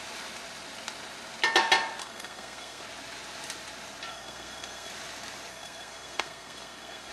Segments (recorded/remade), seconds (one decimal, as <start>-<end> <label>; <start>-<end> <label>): 0.0-2.0 recorded; 2.0-2.8 remade; 2.8-4.1 recorded; 4.1-4.9 remade; 4.9-5.5 recorded; 5.5-7.1 remade